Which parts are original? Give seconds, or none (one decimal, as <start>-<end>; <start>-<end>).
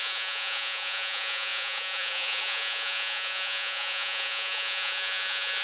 none